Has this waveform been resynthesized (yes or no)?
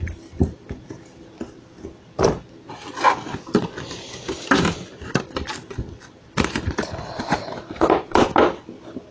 no